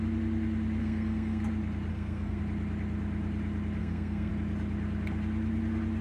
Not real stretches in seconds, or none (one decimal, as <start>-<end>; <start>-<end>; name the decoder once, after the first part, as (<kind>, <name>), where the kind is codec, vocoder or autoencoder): 0.8-1.4 (codec, SNAC); 1.9-2.4; 3.8-4.3